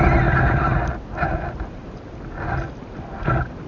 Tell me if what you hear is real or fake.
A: real